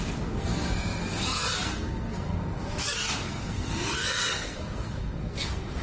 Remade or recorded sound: remade